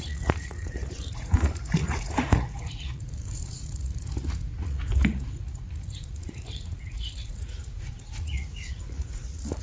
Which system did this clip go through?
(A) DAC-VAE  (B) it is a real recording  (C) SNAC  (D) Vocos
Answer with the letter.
D